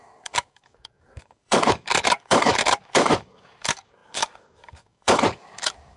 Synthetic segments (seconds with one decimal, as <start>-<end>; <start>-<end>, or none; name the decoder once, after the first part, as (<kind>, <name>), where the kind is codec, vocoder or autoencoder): 0.0-6.0 (codec, DAC)